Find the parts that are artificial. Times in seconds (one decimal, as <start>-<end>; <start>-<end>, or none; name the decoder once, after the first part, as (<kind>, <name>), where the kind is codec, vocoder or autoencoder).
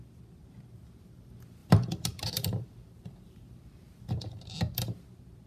1.6-3.9 (vocoder, BigVGAN v2)